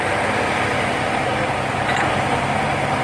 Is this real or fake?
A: real